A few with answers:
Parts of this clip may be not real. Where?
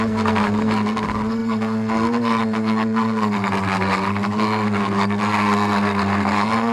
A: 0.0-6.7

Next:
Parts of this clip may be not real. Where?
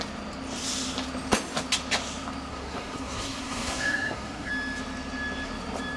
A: 2.5-4.5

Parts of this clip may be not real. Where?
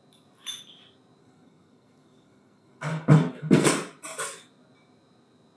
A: 1.2-3.7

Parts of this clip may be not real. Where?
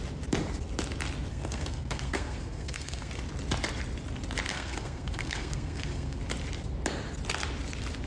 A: 1.3-3.1; 4.5-6.2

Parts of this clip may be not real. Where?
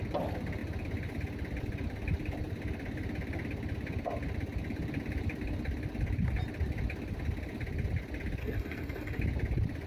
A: 8.4-9.2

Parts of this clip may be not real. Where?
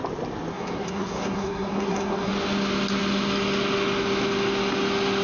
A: 0.5-2.3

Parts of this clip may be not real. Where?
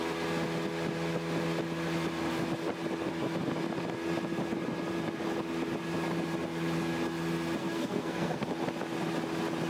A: 7.6-8.5